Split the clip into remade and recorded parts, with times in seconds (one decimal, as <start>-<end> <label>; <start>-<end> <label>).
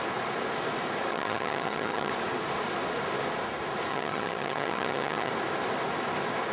0.0-1.1 recorded; 1.1-2.1 remade; 2.1-3.9 recorded; 3.9-5.3 remade; 5.3-6.5 recorded